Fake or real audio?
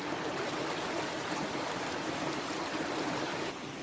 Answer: real